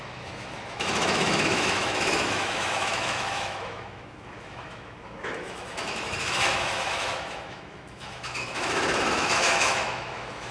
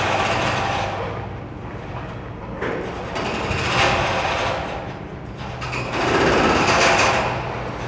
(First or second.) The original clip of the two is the second